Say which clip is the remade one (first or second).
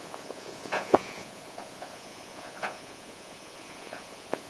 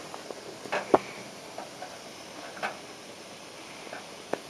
first